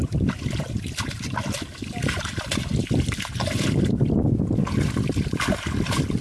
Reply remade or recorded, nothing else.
recorded